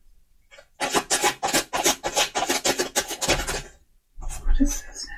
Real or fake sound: real